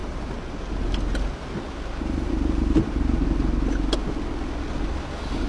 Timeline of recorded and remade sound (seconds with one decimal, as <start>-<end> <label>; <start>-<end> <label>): 0.0-5.5 recorded